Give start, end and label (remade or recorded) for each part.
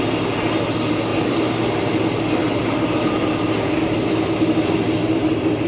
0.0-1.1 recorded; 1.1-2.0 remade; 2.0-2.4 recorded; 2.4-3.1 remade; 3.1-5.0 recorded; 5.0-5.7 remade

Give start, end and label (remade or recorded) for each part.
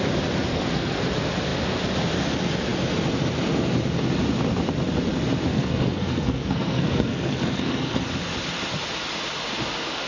0.0-0.5 recorded; 0.5-1.0 remade; 1.0-5.5 recorded; 5.5-8.0 remade; 8.0-10.1 recorded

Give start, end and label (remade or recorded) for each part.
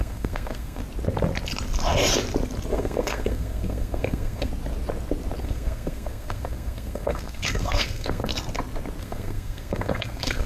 0.0-0.8 remade; 0.8-2.7 recorded; 2.7-4.5 remade; 4.5-5.4 recorded; 5.4-8.3 remade; 8.3-9.0 recorded; 9.0-10.5 remade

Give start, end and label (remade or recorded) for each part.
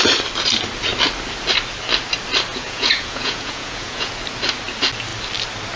0.0-2.5 recorded; 2.5-4.1 remade; 4.1-5.8 recorded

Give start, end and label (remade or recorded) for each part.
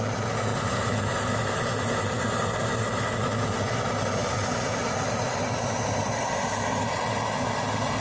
0.0-0.5 recorded; 0.5-1.3 remade; 1.3-8.0 recorded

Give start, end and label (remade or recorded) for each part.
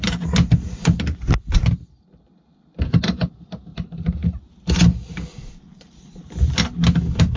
0.0-7.4 recorded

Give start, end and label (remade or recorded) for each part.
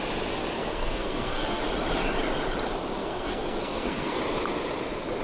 0.0-0.6 recorded; 0.6-1.6 remade; 1.6-3.0 recorded; 3.0-4.2 remade; 4.2-5.2 recorded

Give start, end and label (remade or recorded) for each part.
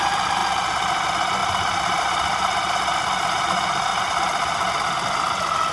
0.0-5.7 recorded